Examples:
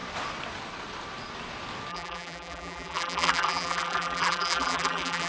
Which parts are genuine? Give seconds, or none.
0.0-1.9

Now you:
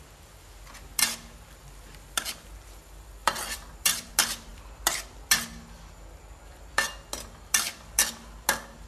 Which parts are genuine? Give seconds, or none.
0.0-3.2; 4.1-8.9

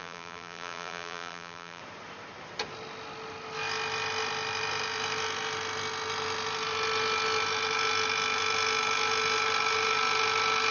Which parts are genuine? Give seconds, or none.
1.8-10.7

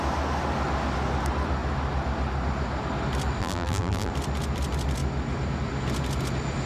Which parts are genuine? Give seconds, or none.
0.0-3.4; 4.1-6.7

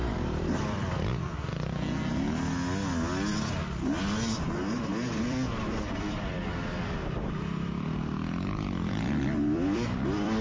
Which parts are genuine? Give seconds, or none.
1.1-5.2

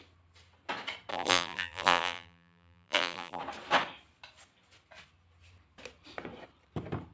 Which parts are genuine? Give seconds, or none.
0.0-1.1; 3.4-7.1

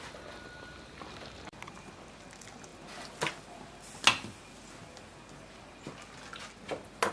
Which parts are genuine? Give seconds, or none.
0.0-7.1